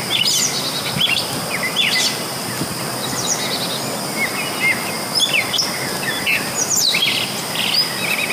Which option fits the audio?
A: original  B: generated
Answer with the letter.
A